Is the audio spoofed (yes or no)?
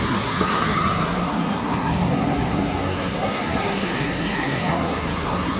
yes